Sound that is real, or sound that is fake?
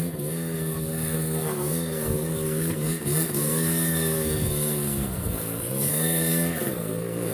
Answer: fake